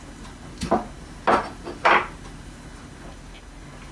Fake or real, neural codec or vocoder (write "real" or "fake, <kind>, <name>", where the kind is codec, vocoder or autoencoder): real